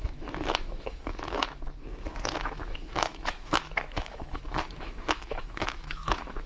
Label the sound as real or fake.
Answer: fake